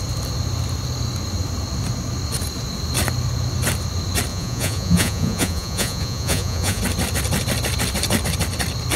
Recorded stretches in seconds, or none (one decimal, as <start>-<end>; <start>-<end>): 0.0-4.3; 6.8-9.0